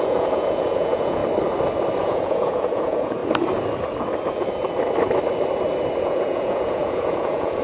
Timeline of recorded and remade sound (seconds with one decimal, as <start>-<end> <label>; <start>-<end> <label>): 0.0-1.2 remade; 1.2-2.0 recorded; 2.0-3.2 remade; 3.2-6.0 recorded; 6.0-7.6 remade

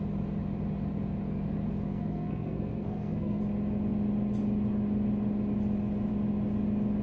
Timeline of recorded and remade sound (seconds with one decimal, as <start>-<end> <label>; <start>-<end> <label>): 0.0-1.9 recorded; 1.9-3.4 remade; 3.4-7.0 recorded

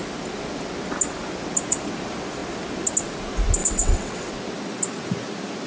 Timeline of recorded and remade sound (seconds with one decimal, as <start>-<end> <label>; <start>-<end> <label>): 0.0-3.6 recorded; 3.6-4.3 remade; 4.3-5.7 recorded

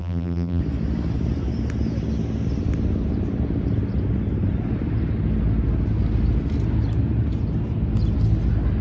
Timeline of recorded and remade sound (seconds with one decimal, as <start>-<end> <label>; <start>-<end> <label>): 0.0-0.6 remade; 0.6-8.8 recorded

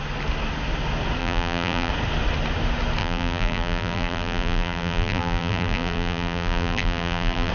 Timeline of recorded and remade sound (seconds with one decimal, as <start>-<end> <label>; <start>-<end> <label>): 0.0-1.2 recorded; 1.2-1.9 remade; 1.9-3.0 recorded; 3.0-7.5 remade

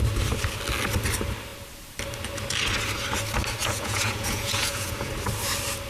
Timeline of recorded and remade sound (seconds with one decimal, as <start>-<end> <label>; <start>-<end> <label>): 0.0-3.6 recorded; 3.6-5.1 remade; 5.1-5.9 recorded

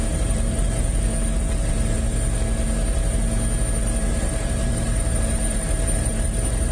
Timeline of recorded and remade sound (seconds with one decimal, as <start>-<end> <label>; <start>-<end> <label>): 0.0-1.1 remade; 1.1-1.7 recorded; 1.7-2.1 remade; 2.1-3.8 recorded; 3.8-6.7 remade

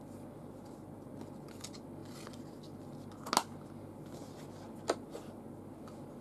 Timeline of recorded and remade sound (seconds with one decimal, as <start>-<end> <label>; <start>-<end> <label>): 0.0-6.2 recorded